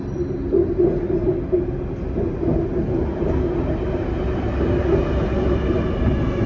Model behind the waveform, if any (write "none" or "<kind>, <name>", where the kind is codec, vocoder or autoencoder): none